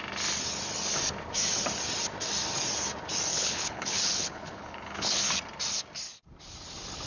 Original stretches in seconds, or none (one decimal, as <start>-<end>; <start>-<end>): 0.0-3.3; 5.2-7.1